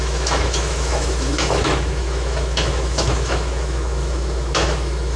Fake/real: fake